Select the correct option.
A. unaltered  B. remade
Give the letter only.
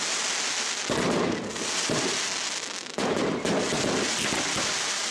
A